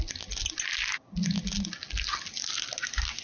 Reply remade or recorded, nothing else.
recorded